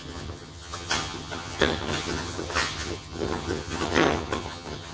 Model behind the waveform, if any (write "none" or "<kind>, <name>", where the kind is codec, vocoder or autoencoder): vocoder, HiFi-GAN